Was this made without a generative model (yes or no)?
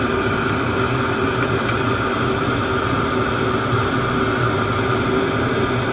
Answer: yes